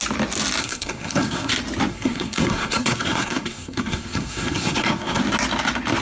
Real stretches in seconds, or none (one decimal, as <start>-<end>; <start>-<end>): 0.0-0.6; 1.5-1.9; 5.2-6.0